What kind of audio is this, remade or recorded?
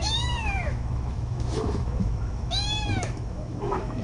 remade